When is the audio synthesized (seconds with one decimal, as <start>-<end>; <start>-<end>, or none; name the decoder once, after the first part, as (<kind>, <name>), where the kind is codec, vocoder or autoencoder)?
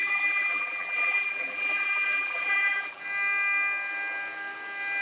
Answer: 0.0-3.0 (vocoder, BigVGAN v2)